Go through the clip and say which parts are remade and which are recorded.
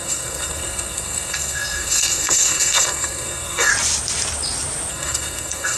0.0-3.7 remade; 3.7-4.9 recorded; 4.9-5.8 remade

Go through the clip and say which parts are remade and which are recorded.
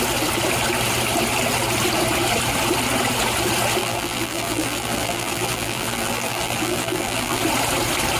0.0-3.8 recorded; 3.8-7.4 remade; 7.4-8.2 recorded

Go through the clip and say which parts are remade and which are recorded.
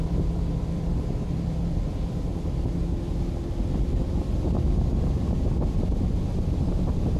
0.0-2.3 remade; 2.3-6.4 recorded; 6.4-7.2 remade